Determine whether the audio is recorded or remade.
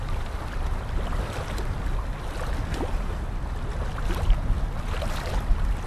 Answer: recorded